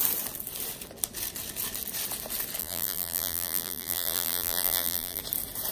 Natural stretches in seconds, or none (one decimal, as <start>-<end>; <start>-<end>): 0.0-2.6; 5.2-5.7